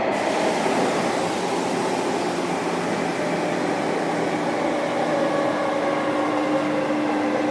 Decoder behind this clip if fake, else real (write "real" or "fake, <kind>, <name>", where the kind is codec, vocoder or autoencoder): real